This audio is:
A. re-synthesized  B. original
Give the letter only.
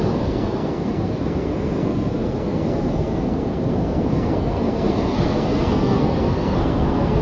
A